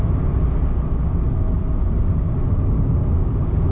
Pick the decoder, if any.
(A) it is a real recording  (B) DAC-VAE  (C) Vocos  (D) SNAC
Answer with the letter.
A